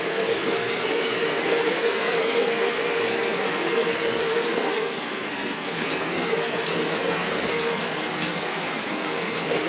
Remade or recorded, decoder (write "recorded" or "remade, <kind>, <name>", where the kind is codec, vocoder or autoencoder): remade, codec, SNAC